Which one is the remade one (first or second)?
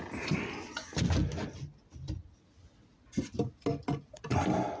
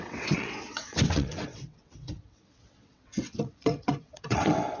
second